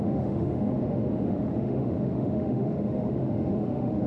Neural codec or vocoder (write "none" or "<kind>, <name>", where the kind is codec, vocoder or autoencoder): autoencoder, DAC-VAE